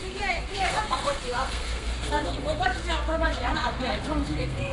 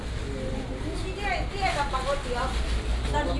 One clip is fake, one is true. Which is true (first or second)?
second